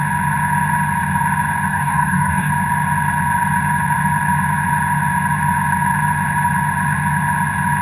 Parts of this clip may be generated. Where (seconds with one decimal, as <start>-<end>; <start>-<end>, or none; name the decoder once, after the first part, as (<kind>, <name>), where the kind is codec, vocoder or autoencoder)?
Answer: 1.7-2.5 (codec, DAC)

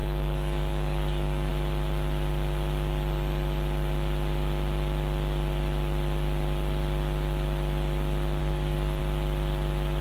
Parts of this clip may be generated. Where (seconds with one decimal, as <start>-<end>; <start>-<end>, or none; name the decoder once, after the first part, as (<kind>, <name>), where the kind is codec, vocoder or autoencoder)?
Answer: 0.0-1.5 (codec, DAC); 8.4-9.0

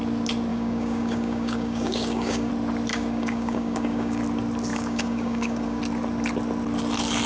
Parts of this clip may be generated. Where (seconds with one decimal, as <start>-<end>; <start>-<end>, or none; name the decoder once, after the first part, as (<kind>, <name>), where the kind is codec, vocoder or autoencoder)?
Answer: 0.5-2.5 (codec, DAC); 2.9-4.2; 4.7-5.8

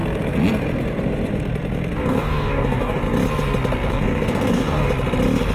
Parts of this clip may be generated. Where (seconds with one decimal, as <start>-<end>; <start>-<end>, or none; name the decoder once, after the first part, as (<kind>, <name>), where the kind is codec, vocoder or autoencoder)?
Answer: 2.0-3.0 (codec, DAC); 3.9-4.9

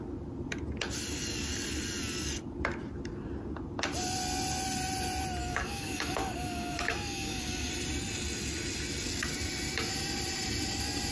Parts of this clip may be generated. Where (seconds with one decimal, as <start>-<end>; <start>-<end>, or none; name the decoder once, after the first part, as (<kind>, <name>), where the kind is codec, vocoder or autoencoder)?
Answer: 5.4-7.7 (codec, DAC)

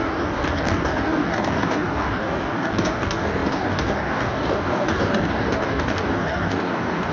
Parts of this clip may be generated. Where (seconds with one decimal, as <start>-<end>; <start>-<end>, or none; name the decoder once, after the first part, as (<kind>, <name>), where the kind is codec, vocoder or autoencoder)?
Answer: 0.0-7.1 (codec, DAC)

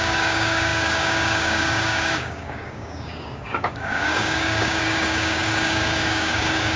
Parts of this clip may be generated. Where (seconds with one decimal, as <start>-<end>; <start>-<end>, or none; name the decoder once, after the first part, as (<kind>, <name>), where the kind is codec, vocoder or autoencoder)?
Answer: 0.0-6.8 (codec, DAC)

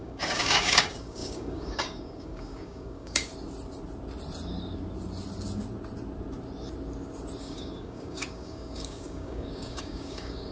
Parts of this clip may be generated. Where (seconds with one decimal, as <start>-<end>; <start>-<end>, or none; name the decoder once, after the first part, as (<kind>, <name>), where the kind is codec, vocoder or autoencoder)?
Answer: 0.0-3.3 (codec, DAC); 7.4-10.5